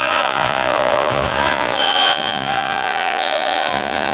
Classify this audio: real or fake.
fake